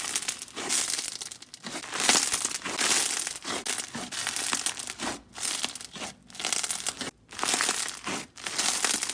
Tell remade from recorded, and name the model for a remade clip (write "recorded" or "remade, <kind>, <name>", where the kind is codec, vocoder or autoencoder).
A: recorded